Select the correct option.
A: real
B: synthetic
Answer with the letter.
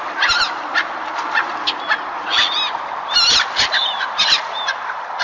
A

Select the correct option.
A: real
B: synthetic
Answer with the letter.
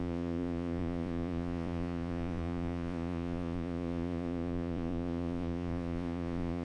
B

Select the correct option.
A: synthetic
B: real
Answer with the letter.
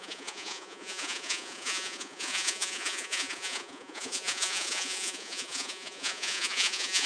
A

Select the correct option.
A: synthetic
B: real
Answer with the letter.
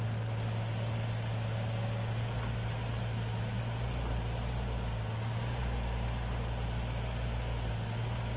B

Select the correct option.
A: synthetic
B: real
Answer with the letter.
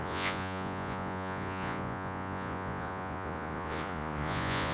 A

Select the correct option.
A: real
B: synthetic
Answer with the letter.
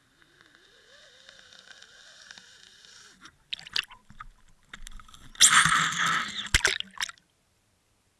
A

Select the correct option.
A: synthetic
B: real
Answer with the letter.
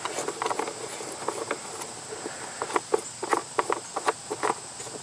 B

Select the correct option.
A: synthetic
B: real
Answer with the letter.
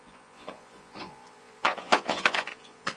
A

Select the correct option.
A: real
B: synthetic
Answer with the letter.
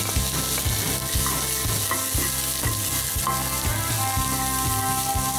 A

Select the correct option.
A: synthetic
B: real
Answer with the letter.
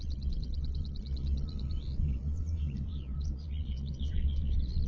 A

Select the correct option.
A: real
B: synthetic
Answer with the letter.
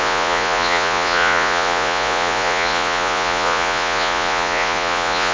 B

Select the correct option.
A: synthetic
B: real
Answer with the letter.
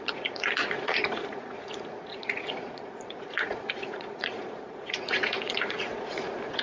A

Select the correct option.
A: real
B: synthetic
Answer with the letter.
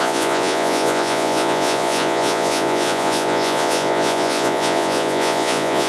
B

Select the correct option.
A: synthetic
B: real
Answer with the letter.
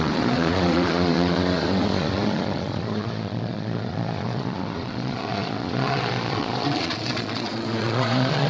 A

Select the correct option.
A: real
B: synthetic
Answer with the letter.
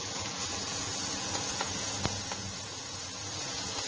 B